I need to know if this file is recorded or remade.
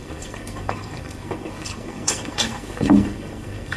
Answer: remade